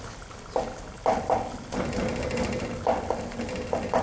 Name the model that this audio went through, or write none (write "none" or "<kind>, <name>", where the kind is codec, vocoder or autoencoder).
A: none